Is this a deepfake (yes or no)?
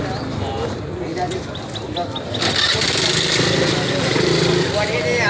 no